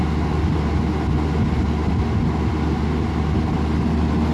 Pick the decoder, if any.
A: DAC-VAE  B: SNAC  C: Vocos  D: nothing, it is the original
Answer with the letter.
D